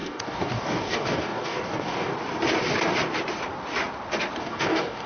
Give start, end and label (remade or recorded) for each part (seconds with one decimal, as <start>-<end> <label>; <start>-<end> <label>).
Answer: 0.0-2.1 remade; 2.1-4.4 recorded; 4.4-5.1 remade